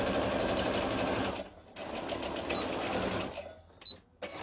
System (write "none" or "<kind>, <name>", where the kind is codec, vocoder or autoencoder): none